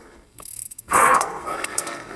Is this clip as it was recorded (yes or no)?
no